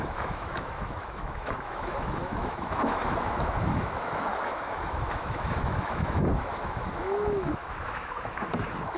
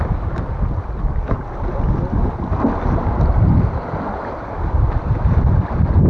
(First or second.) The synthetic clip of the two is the first